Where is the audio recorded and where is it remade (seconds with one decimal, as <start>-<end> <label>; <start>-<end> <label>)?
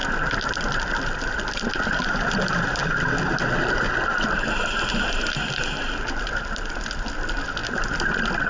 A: 0.0-8.5 recorded